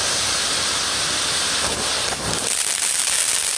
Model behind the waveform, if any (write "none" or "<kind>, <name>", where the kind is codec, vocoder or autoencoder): none